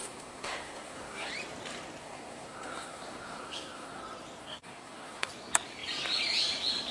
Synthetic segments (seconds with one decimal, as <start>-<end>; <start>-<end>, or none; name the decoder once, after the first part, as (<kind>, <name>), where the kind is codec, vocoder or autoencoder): 0.0-1.3 (codec, SNAC); 2.0-4.0; 4.4-5.3